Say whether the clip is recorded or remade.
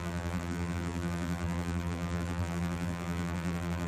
remade